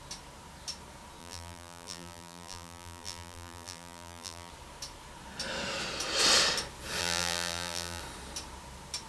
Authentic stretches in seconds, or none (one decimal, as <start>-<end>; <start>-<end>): 0.0-1.2; 4.5-7.0; 8.0-9.1